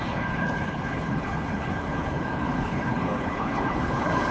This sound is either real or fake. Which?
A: fake